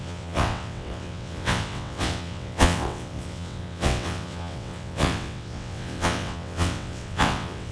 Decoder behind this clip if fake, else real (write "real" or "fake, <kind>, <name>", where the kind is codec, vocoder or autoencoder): fake, vocoder, WaveNeXt